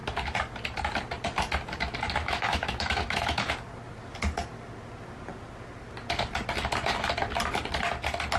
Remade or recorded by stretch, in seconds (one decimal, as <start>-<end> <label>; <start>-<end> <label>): 0.0-2.2 recorded; 2.2-3.5 remade; 3.5-8.4 recorded